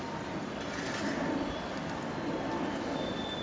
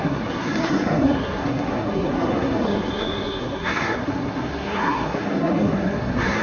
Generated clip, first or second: second